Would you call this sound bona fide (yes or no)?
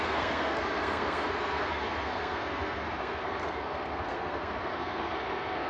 no